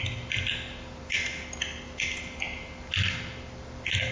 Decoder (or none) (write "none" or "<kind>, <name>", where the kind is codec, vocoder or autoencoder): none